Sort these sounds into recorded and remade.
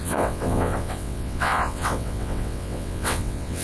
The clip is remade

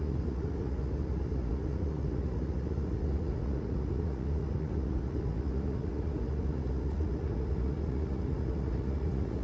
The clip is remade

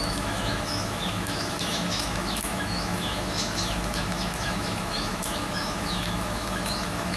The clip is remade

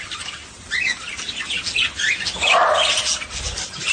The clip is recorded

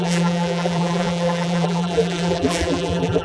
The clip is remade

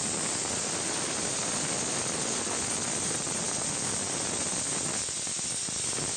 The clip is recorded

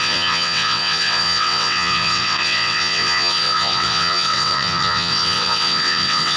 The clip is remade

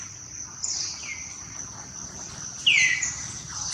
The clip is recorded